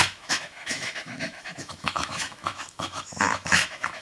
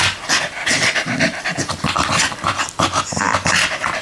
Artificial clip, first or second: first